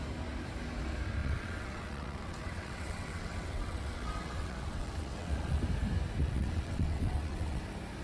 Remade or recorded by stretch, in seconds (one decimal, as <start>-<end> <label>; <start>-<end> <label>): 0.0-1.2 recorded; 1.2-5.6 remade; 5.6-6.2 recorded; 6.2-7.6 remade; 7.6-8.0 recorded